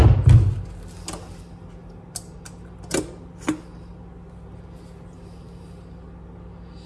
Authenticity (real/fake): real